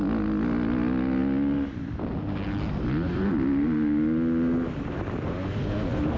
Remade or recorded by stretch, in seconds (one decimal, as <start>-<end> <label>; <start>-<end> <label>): 0.0-6.2 recorded